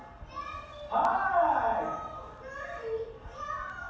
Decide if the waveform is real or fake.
real